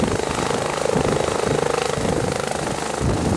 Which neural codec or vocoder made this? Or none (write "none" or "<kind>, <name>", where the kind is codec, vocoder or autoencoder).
none